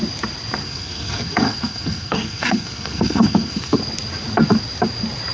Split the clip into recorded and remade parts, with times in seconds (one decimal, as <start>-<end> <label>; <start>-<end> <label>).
0.0-0.6 recorded; 0.6-3.8 remade; 3.8-5.3 recorded